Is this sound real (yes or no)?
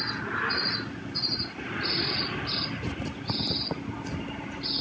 yes